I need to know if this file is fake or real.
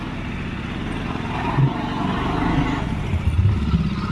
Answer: real